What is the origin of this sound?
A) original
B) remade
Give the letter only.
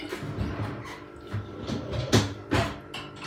A